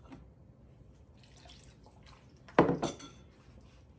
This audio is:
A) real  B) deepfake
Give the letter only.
A